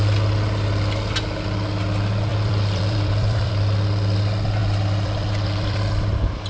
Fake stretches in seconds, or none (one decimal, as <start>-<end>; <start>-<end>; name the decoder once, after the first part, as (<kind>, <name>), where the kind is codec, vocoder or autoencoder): 2.3-3.5 (vocoder, BigVGAN v2); 4.6-5.9